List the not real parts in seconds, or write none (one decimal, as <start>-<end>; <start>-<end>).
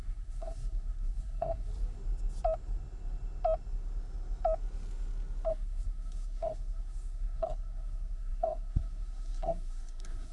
0.0-1.7; 5.5-10.3